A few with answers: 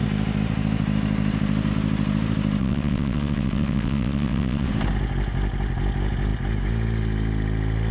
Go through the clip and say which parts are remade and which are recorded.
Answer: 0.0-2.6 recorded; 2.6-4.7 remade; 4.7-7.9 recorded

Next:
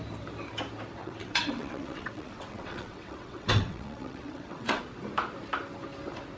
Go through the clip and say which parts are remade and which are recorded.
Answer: 0.0-1.0 recorded; 1.0-4.8 remade; 4.8-6.4 recorded

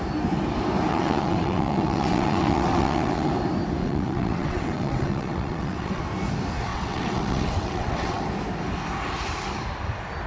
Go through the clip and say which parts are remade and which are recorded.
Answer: 0.0-0.9 recorded; 0.9-3.3 remade; 3.3-3.8 recorded; 3.8-6.0 remade; 6.0-6.7 recorded; 6.7-8.2 remade; 8.2-10.3 recorded

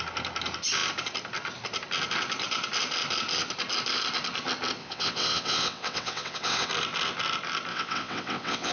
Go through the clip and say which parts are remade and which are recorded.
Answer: 0.0-4.8 recorded; 4.8-6.7 remade; 6.7-7.7 recorded; 7.7-8.7 remade

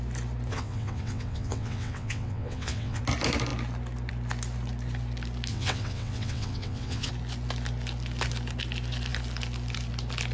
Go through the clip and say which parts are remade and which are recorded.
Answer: 0.0-0.5 recorded; 0.5-3.0 remade; 3.0-5.5 recorded; 5.5-7.1 remade; 7.1-10.3 recorded

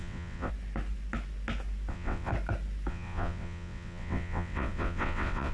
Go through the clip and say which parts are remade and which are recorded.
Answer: 0.0-0.5 remade; 0.5-1.9 recorded; 1.9-2.3 remade; 2.3-2.9 recorded; 2.9-5.5 remade

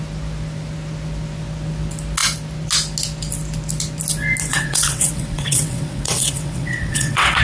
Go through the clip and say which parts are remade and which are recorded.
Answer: 0.0-4.5 recorded; 4.5-7.4 remade

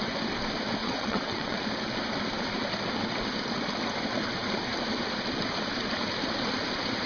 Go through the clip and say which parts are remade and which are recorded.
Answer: 0.0-0.8 recorded; 0.8-1.6 remade; 1.6-7.1 recorded